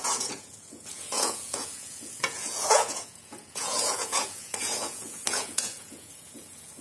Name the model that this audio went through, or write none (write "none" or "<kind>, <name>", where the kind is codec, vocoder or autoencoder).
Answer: vocoder, Vocos